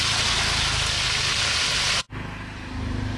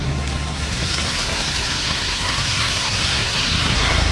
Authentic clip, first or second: first